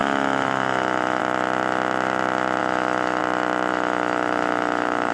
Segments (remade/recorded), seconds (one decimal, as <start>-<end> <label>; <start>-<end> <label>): 0.0-1.2 remade; 1.2-2.6 recorded; 2.6-3.2 remade; 3.2-3.7 recorded; 3.7-5.1 remade